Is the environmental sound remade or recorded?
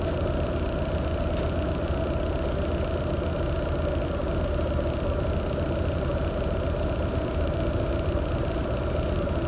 recorded